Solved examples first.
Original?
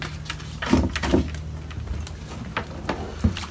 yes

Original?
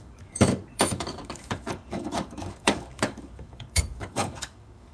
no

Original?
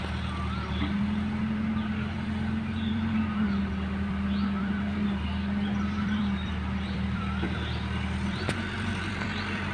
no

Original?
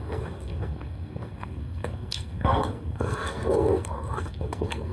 no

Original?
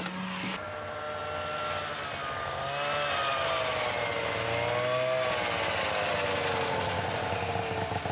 yes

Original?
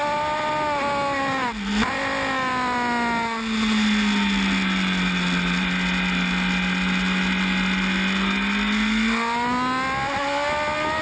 yes